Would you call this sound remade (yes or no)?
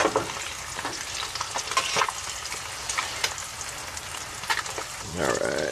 no